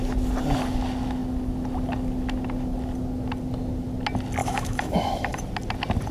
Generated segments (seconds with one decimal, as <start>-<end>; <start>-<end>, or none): 4.4-5.4